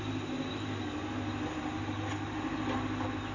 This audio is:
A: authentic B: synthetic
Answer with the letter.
A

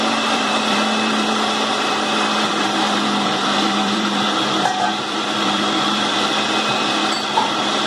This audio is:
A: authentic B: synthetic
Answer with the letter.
B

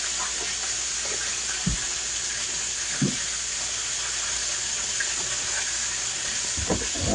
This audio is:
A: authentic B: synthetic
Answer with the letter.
A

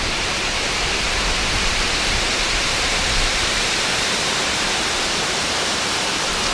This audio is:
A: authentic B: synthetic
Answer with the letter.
B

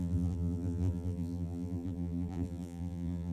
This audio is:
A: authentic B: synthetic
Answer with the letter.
B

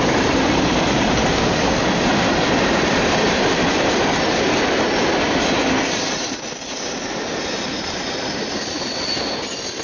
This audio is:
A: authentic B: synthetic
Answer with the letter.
B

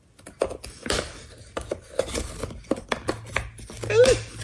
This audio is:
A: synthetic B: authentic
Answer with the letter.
B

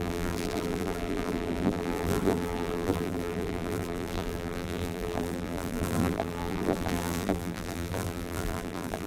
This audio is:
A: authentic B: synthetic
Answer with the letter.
B